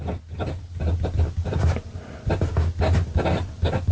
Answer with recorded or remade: recorded